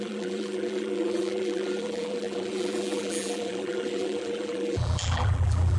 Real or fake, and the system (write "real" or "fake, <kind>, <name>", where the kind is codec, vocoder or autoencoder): fake, vocoder, BigVGAN v2